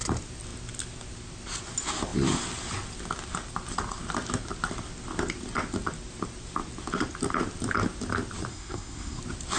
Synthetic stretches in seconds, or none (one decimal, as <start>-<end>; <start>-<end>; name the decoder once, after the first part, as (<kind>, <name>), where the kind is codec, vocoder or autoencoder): 8.5-9.2 (codec, SNAC)